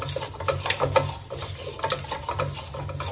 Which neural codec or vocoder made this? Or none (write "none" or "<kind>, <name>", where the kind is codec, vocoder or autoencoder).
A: none